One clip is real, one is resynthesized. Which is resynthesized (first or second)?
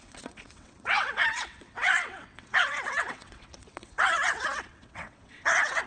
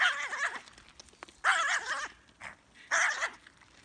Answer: first